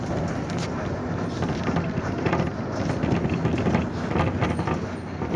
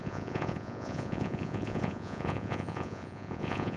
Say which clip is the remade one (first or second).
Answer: second